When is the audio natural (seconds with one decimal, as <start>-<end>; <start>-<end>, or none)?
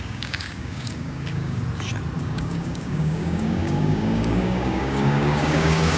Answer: 1.6-2.2